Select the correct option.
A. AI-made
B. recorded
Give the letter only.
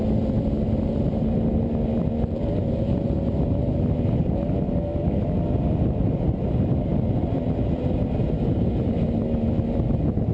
B